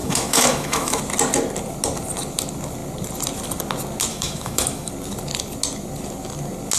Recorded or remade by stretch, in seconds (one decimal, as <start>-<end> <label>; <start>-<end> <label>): 0.0-1.0 remade; 1.0-4.1 recorded; 4.1-4.9 remade; 4.9-6.8 recorded